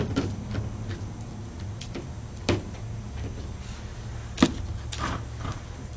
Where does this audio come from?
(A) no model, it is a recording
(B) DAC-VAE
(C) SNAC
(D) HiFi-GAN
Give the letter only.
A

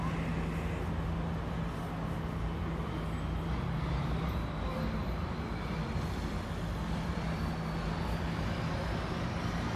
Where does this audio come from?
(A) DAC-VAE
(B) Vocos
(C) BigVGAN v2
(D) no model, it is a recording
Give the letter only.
D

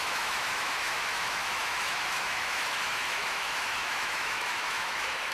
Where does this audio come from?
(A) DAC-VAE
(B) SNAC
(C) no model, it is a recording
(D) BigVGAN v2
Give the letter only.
A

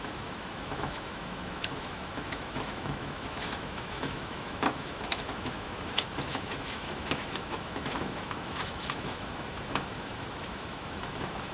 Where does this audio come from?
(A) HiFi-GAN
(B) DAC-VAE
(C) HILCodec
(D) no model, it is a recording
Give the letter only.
B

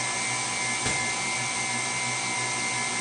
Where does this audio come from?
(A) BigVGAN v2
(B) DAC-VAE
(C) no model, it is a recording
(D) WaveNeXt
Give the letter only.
C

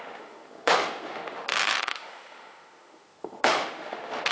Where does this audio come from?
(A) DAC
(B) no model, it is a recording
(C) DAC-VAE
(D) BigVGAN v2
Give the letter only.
C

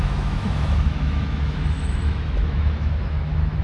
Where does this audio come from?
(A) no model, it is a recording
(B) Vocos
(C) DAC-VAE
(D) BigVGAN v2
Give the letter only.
C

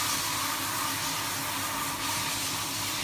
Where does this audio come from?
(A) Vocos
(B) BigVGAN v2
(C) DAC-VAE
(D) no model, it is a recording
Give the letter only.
D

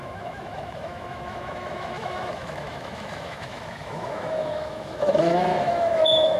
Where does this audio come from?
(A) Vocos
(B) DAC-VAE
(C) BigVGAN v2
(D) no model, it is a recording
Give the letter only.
B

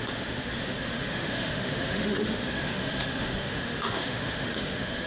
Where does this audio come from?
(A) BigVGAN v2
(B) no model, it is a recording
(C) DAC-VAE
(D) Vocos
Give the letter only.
C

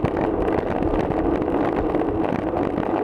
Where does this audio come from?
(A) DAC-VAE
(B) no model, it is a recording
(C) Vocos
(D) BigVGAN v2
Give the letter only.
B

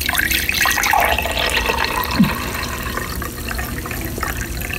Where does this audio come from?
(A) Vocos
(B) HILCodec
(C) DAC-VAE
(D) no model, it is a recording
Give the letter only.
D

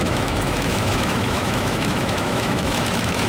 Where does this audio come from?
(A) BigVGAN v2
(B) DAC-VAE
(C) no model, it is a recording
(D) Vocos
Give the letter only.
B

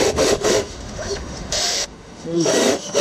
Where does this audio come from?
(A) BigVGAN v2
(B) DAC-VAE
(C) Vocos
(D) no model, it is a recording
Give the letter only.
B